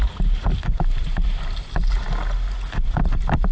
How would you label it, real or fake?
real